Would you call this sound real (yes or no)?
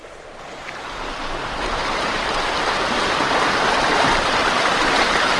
no